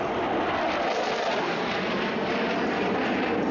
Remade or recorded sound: recorded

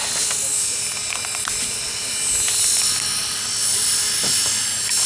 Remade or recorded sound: recorded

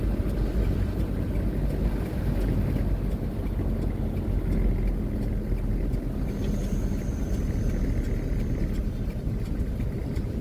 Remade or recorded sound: recorded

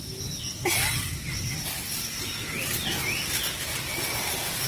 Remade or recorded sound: recorded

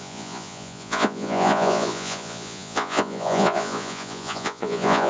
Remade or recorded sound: remade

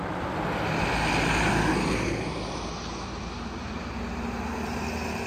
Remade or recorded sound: recorded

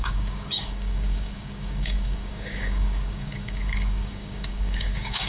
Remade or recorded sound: remade